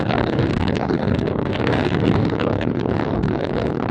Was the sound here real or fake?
fake